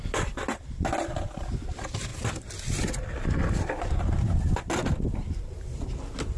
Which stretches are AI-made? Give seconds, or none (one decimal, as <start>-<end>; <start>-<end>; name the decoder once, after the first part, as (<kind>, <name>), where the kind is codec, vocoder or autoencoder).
2.1-5.9 (vocoder, BigVGAN v2)